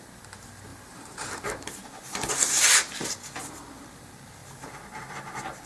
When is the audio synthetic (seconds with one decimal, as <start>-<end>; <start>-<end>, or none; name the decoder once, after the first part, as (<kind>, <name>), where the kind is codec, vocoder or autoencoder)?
0.7-1.5 (vocoder, BigVGAN v2)